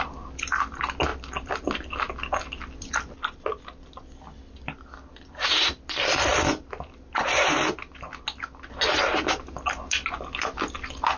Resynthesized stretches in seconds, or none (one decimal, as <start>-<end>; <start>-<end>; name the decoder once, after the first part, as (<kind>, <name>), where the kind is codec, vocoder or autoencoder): none